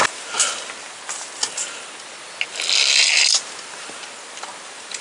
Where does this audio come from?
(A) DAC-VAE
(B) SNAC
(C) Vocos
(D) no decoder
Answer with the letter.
D